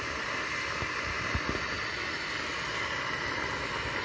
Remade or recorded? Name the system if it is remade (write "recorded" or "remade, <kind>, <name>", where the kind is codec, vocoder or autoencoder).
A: recorded